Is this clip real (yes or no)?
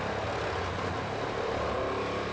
yes